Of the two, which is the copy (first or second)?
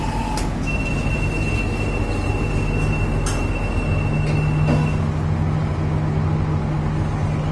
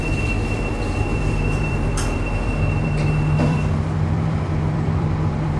second